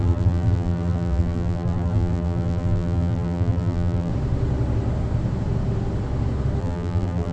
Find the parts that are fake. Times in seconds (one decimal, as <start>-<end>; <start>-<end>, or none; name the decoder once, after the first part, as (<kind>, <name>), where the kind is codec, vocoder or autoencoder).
0.0-4.1 (vocoder, BigVGAN v2); 6.6-7.3